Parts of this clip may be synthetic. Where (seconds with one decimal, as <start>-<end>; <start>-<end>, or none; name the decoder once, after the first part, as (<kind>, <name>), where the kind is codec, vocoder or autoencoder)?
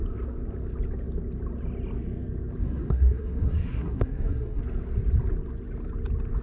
2.6-4.6 (codec, SNAC)